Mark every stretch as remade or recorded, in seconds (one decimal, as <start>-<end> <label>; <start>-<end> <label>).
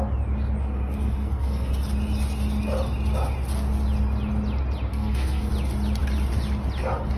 0.0-0.6 recorded; 0.6-1.7 remade; 1.7-4.9 recorded; 4.9-5.5 remade; 5.5-7.2 recorded